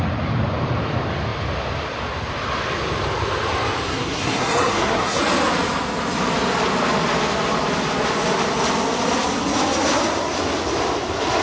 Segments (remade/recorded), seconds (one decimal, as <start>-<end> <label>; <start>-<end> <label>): 0.0-3.9 recorded; 3.9-5.2 remade; 5.2-11.4 recorded

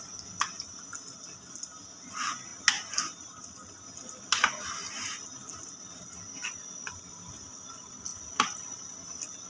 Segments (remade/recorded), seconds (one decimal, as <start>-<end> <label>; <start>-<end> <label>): 0.0-9.5 recorded

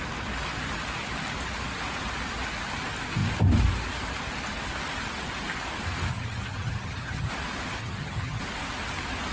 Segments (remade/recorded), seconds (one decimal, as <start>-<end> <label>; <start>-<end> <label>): 0.0-6.1 recorded; 6.1-7.3 remade; 7.3-7.8 recorded; 7.8-8.4 remade; 8.4-9.3 recorded

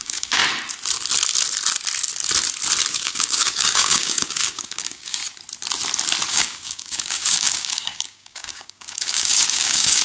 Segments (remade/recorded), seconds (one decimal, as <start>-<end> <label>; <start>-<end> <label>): 0.0-0.4 remade; 0.4-2.9 recorded; 2.9-5.2 remade; 5.2-6.3 recorded; 6.3-10.0 remade

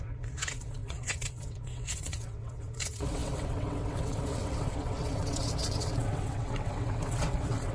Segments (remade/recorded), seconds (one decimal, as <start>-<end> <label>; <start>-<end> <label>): 0.0-7.7 remade

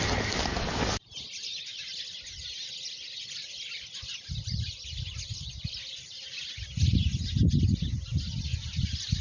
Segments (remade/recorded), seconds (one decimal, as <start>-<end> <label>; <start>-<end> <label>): 0.0-9.2 recorded

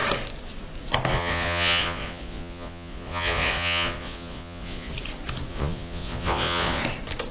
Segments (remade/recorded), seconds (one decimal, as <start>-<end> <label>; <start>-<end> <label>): 0.0-1.1 recorded; 1.1-4.9 remade; 4.9-5.5 recorded; 5.5-6.8 remade; 6.8-7.3 recorded